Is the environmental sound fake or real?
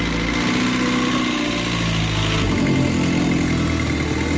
real